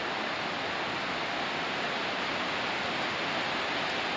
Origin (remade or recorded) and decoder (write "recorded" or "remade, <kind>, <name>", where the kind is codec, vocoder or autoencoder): recorded